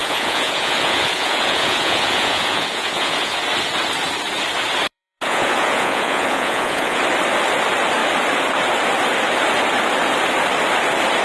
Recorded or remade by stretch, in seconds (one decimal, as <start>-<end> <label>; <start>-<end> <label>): 0.0-3.4 remade; 3.4-4.9 recorded; 4.9-7.0 remade; 7.0-11.2 recorded